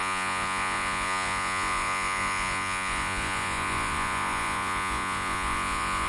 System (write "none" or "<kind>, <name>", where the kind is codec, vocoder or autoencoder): vocoder, Vocos